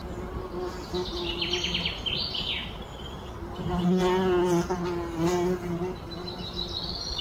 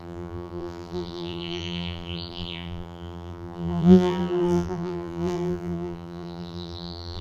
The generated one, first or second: second